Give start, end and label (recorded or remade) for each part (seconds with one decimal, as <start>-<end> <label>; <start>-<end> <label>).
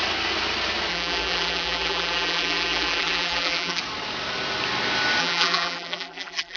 0.0-0.9 recorded; 0.9-3.8 remade; 3.8-5.2 recorded; 5.2-6.6 remade